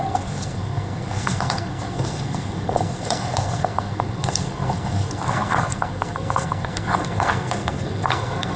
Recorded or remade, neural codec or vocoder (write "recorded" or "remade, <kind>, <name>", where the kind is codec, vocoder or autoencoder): remade, codec, SNAC